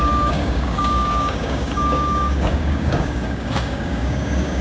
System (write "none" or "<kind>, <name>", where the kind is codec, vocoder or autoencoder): codec, DAC